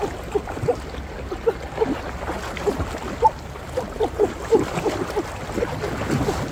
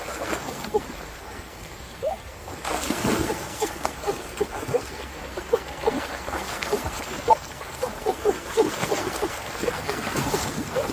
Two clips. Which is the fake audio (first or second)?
second